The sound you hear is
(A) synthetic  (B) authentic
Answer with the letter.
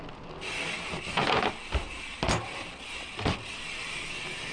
B